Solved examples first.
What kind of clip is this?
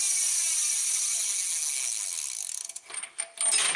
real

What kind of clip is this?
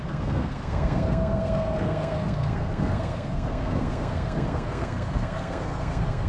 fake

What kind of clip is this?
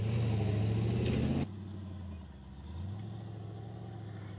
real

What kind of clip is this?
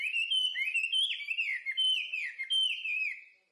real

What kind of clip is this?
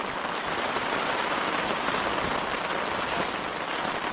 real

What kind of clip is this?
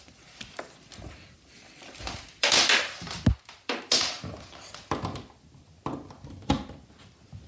real